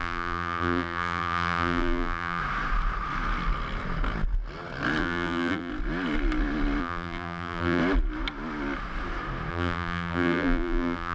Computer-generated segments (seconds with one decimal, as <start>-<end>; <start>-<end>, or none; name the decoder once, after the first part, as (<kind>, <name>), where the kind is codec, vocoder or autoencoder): 0.0-2.4 (vocoder, BigVGAN v2); 5.0-5.7; 6.8-7.8; 9.5-11.1